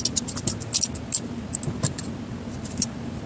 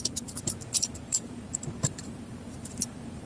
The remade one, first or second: second